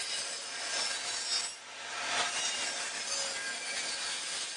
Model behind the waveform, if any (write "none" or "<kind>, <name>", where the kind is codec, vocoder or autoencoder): none